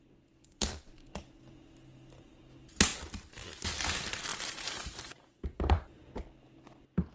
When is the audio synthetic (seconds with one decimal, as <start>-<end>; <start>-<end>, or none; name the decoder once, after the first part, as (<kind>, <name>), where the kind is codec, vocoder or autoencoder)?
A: 0.4-1.1 (vocoder, BigVGAN v2); 4.3-6.1

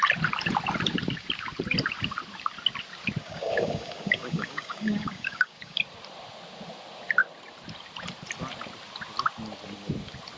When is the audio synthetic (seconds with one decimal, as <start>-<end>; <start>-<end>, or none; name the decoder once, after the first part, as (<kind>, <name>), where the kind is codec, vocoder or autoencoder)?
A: 3.2-5.8 (codec, DAC)

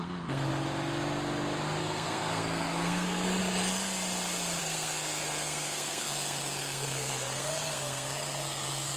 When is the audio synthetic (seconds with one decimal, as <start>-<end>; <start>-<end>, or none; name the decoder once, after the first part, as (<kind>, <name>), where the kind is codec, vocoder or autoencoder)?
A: 0.0-0.5 (codec, SNAC); 1.8-3.4; 4.6-9.0

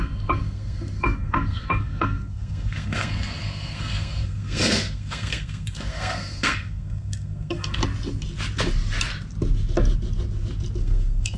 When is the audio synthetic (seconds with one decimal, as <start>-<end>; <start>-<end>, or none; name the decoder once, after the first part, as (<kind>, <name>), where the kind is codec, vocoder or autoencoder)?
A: 0.0-7.8 (codec, SNAC); 10.8-11.4

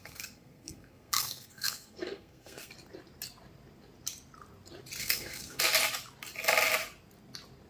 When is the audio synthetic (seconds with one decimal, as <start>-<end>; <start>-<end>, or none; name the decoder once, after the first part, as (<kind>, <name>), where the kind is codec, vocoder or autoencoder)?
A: 0.0-2.7 (codec, SNAC); 5.0-5.6

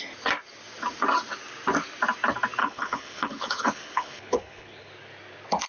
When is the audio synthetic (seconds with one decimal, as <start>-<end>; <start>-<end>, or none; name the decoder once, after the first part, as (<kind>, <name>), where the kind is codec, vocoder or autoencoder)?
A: 2.6-4.9 (codec, HILCodec)

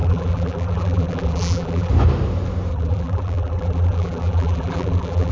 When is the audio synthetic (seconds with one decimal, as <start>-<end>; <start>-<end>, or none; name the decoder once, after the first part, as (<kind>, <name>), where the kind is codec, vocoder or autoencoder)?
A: 0.0-1.9 (vocoder, BigVGAN v2); 2.7-5.3